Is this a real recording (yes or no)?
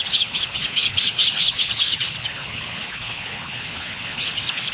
no